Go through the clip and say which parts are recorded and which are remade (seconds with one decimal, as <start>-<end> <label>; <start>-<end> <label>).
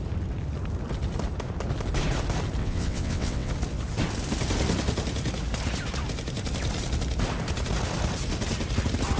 0.0-2.6 recorded; 2.6-3.5 remade; 3.5-9.2 recorded